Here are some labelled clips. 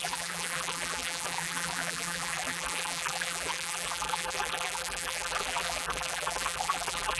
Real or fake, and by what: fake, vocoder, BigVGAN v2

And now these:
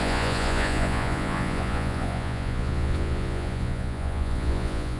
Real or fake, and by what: fake, vocoder, Vocos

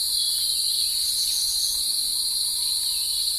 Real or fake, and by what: real